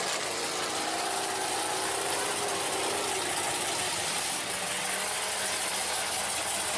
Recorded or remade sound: recorded